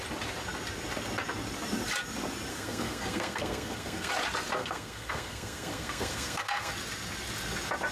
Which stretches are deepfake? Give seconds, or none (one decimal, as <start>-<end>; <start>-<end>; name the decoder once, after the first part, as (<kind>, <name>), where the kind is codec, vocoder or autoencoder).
2.5-4.1 (codec, SNAC); 4.6-6.7